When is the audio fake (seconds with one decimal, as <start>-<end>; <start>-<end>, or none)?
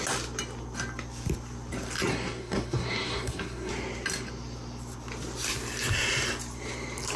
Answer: 2.1-3.7